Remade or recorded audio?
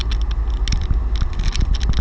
recorded